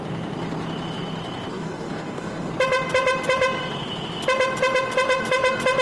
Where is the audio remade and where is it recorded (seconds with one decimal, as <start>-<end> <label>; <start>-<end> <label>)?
0.0-1.5 recorded; 1.5-2.5 remade; 2.5-5.8 recorded